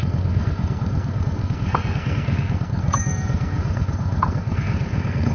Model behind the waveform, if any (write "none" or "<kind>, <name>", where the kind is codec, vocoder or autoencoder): codec, SNAC